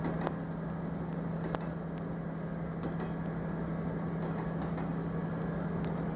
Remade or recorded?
recorded